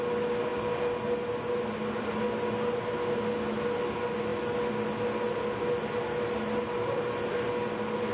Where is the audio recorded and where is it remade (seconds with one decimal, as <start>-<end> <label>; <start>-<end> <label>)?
0.0-8.1 recorded